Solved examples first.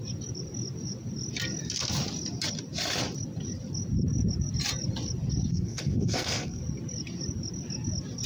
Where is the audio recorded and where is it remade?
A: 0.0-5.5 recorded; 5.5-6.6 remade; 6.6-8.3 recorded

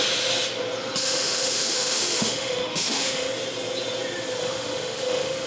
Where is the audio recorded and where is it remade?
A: 0.0-1.0 recorded; 1.0-3.3 remade; 3.3-4.4 recorded; 4.4-5.5 remade

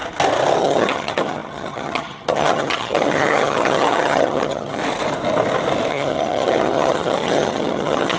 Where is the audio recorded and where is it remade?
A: 0.0-0.6 recorded; 0.6-4.8 remade; 4.8-5.9 recorded; 5.9-8.2 remade

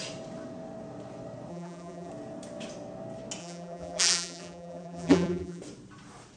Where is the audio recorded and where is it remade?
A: 0.0-1.5 recorded; 1.5-2.1 remade; 2.1-3.4 recorded; 3.4-5.6 remade; 5.6-6.4 recorded

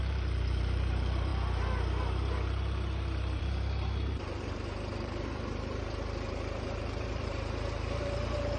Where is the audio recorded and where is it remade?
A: 0.0-1.3 remade; 1.3-3.4 recorded; 3.4-8.6 remade

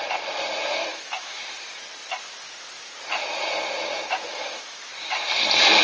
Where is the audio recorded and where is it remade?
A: 0.0-0.9 recorded; 0.9-1.4 remade; 1.4-4.3 recorded; 4.3-4.9 remade; 4.9-5.8 recorded

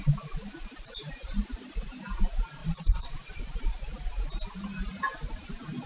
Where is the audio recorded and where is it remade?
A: 0.0-2.6 recorded; 2.6-3.4 remade; 3.4-5.9 recorded

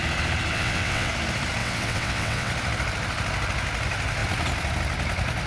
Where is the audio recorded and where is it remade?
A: 0.0-0.5 recorded; 0.5-1.1 remade; 1.1-1.6 recorded; 1.6-2.5 remade; 2.5-5.5 recorded